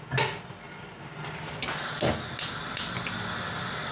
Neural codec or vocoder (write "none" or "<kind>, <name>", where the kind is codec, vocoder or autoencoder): none